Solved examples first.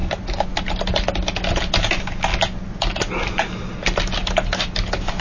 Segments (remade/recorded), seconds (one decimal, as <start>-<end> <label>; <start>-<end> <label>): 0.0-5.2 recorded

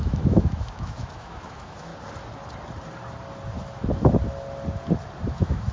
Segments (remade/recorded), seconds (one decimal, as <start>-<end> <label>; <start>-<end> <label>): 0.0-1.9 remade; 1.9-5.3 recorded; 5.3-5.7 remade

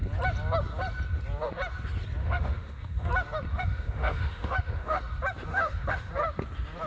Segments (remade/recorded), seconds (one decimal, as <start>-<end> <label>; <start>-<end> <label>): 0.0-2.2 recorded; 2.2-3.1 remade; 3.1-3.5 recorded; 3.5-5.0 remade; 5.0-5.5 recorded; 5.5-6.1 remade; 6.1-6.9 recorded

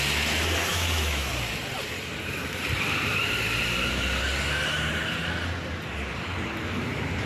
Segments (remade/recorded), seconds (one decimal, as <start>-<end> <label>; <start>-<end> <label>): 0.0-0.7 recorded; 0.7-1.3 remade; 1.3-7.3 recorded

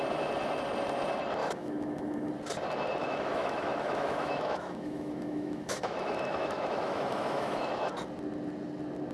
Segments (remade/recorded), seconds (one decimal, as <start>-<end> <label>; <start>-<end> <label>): 0.0-1.4 recorded; 1.4-2.3 remade; 2.3-3.0 recorded; 3.0-7.9 remade; 7.9-9.1 recorded

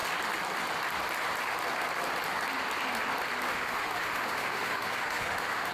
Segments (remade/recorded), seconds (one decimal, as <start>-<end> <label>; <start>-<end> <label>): 0.0-3.5 recorded; 3.5-5.7 remade

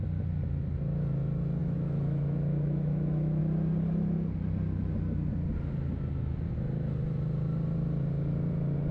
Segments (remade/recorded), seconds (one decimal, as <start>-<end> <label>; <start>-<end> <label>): 0.0-1.6 recorded; 1.6-3.4 remade; 3.4-8.9 recorded